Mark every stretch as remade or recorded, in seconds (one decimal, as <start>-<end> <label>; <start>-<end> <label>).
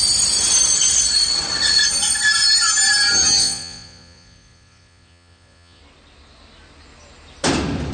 0.0-3.4 recorded; 3.4-5.8 remade; 5.8-7.9 recorded